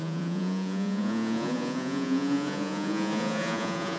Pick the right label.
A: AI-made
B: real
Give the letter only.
A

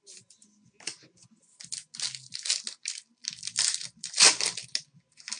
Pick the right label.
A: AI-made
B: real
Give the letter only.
B